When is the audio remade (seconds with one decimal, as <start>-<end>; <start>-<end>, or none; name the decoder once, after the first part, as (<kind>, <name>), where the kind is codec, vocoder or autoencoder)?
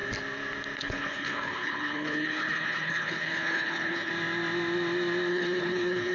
0.8-4.1 (codec, HILCodec); 5.3-6.1